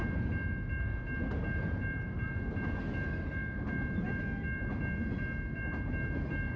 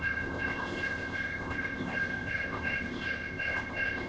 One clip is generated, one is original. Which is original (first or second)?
first